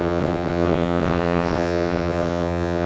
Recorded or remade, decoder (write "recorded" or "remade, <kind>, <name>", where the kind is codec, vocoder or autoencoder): remade, vocoder, WaveNeXt